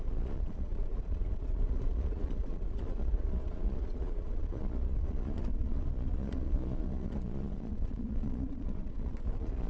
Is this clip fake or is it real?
fake